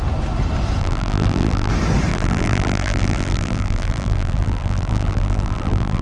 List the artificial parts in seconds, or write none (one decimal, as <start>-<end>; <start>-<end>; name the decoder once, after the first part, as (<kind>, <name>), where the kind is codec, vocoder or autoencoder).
0.8-1.7 (vocoder, BigVGAN v2); 2.1-6.0